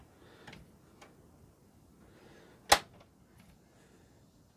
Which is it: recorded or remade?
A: recorded